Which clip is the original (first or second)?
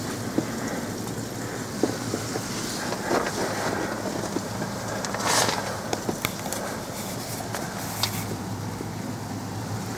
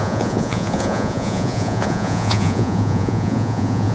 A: first